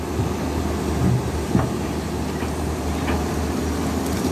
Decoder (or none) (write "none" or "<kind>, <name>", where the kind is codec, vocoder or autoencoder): none